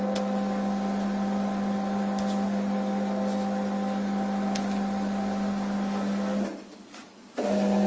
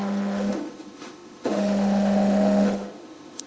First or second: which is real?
first